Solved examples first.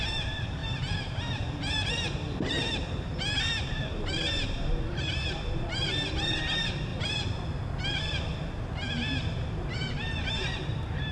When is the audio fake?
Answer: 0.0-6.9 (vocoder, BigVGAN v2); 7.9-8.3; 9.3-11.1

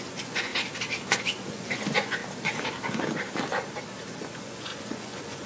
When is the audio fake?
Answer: 0.0-0.5 (vocoder, Vocos); 1.2-2.2; 4.1-5.5